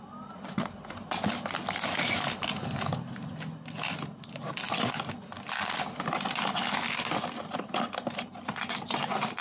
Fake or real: real